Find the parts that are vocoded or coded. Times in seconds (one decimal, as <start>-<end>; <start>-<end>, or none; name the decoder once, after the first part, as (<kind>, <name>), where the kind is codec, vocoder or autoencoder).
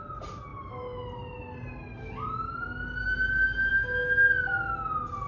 none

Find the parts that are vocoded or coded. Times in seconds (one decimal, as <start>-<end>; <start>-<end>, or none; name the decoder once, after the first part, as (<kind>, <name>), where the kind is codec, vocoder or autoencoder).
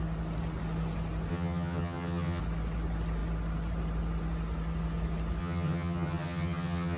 1.3-2.4 (vocoder, HiFi-GAN); 5.4-7.0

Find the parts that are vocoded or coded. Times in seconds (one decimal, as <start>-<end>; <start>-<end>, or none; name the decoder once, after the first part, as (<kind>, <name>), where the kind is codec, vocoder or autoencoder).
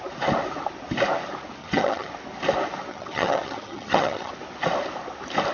1.6-2.1 (vocoder, HiFi-GAN); 2.9-4.3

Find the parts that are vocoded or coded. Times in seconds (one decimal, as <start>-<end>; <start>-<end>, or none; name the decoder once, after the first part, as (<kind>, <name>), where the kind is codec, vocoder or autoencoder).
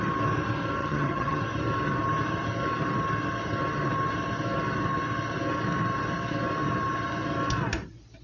0.8-1.4 (vocoder, HiFi-GAN)